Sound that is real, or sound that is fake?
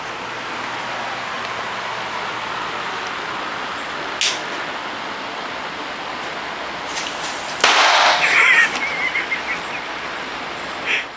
real